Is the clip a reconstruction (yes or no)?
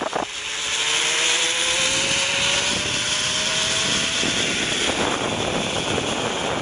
no